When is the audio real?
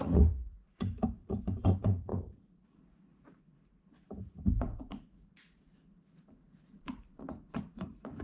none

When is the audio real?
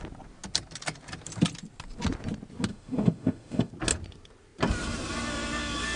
0.0-2.7; 3.7-6.0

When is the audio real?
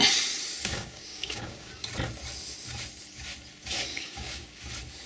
0.0-0.6; 1.7-3.9; 4.6-5.1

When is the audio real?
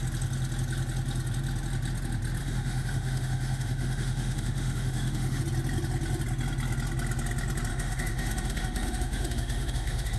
0.0-2.4; 5.4-7.7